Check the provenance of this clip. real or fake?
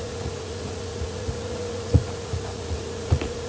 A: fake